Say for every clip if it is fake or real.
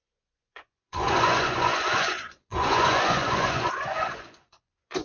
fake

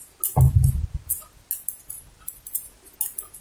real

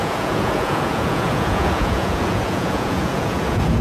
fake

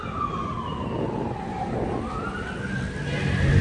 real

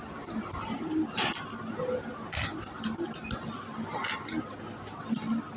real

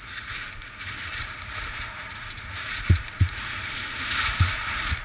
fake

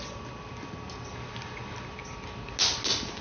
real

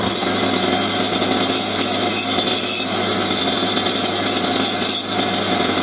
real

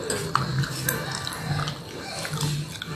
real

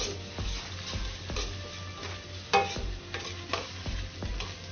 real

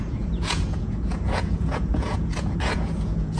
fake